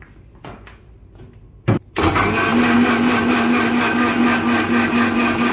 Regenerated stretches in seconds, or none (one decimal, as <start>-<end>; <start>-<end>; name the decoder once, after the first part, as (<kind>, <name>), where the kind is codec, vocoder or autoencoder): none